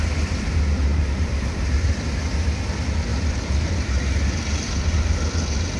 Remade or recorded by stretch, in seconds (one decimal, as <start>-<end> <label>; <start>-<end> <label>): 0.0-0.9 recorded; 0.9-2.0 remade; 2.0-3.1 recorded; 3.1-5.1 remade; 5.1-5.8 recorded